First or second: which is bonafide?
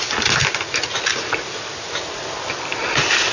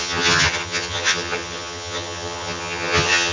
first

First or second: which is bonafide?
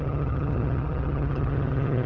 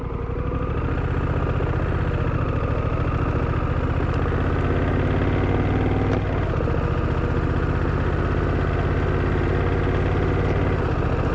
second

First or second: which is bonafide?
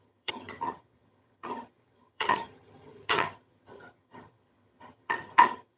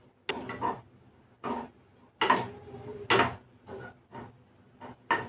second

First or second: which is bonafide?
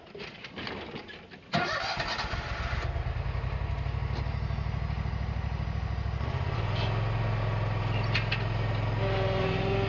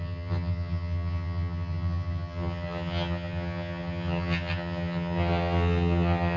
first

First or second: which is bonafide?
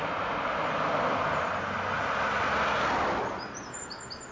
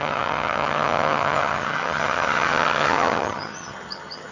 first